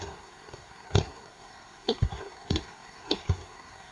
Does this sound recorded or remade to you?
remade